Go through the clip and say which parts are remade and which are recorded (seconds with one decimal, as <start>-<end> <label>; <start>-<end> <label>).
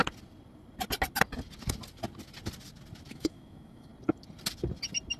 0.0-3.1 recorded; 3.1-3.9 remade; 3.9-5.2 recorded